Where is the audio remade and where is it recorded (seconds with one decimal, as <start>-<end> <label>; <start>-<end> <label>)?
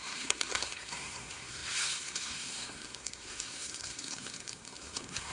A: 0.0-5.3 remade